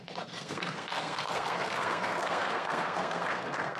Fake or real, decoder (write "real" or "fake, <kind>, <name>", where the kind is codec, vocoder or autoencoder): fake, codec, SNAC